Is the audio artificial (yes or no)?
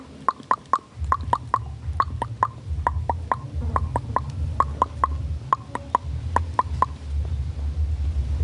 no